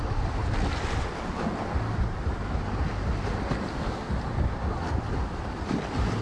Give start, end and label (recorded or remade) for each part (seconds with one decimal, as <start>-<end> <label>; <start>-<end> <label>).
0.0-6.2 recorded